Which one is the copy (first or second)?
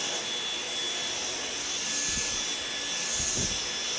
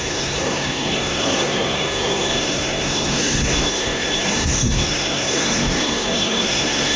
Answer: second